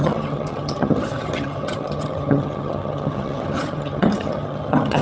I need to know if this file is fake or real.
fake